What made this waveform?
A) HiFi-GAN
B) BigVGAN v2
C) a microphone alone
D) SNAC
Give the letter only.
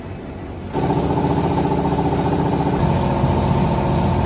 C